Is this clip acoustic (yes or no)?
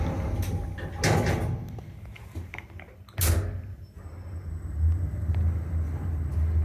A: yes